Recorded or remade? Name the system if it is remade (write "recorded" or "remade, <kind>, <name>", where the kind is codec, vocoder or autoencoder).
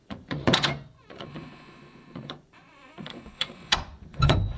remade, vocoder, Vocos